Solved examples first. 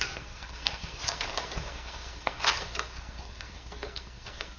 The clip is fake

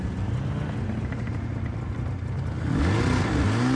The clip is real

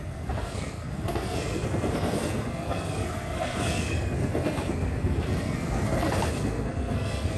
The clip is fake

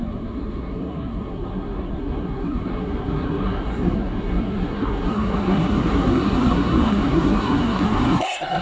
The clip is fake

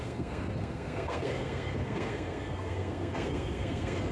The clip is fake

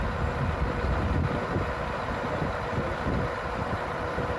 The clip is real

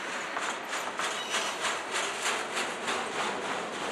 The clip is real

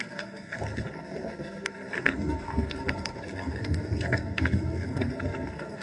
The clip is fake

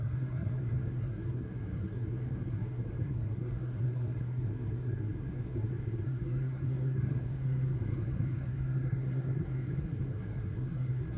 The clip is fake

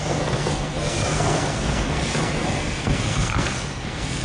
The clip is fake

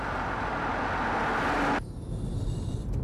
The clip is real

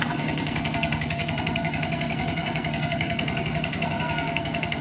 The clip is fake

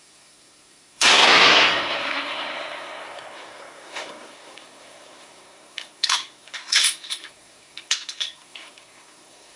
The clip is fake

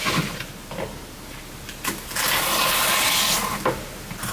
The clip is real